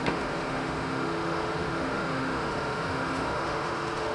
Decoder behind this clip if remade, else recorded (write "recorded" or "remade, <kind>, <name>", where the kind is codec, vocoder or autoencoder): remade, autoencoder, DAC-VAE